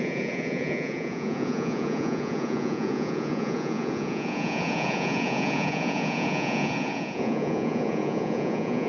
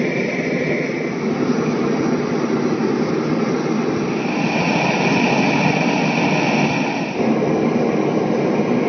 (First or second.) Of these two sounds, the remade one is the first